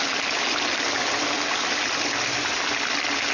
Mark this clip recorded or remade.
recorded